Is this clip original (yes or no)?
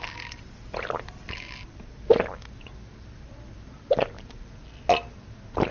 yes